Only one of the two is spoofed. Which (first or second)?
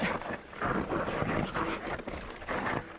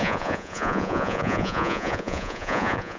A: second